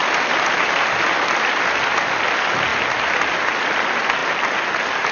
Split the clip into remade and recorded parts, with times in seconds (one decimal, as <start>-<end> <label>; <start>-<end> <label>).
0.0-5.1 recorded